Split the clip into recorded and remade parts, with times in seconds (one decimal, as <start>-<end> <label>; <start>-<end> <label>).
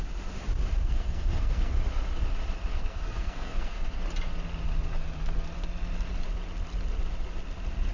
0.0-0.8 recorded; 0.8-1.7 remade; 1.7-2.7 recorded; 2.7-3.8 remade; 3.8-7.9 recorded